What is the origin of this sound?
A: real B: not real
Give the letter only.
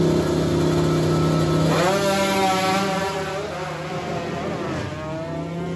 A